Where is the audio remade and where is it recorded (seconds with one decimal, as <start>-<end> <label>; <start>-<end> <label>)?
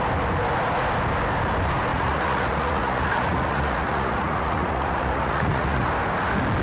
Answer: 0.0-1.9 recorded; 1.9-5.9 remade; 5.9-6.6 recorded